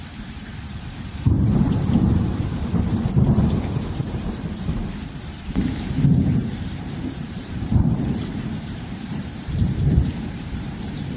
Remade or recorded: remade